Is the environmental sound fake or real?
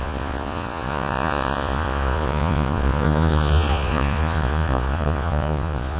fake